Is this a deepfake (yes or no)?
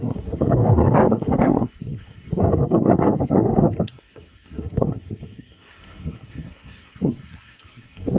yes